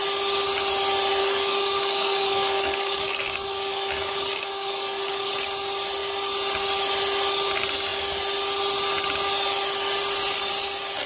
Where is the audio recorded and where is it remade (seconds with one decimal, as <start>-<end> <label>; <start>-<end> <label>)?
0.0-1.2 recorded; 1.2-5.3 remade; 5.3-11.1 recorded